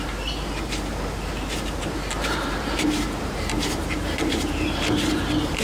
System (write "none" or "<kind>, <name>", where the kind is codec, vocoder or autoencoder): vocoder, BigVGAN v2